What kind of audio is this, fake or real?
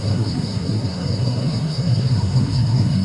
fake